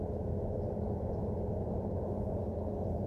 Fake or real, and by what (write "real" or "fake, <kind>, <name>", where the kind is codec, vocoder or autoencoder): fake, vocoder, BigVGAN v2